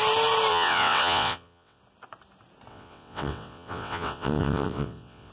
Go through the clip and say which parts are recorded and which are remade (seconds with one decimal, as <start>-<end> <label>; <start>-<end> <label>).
0.0-0.5 recorded; 0.5-1.8 remade; 1.8-2.7 recorded; 2.7-5.3 remade